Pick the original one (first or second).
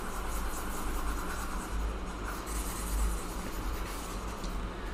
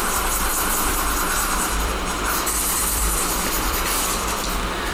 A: first